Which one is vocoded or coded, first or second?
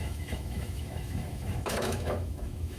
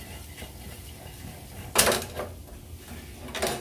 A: first